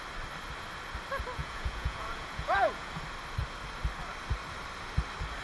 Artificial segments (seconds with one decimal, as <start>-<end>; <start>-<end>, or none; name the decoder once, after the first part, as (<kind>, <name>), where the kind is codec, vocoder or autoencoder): 1.4-3.0 (vocoder, Vocos)